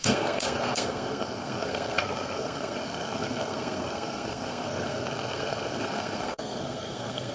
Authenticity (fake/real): fake